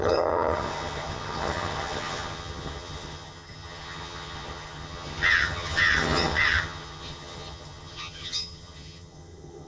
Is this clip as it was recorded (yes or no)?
no